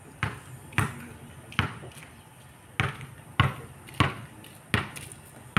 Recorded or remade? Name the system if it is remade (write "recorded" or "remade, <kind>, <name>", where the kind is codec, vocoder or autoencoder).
recorded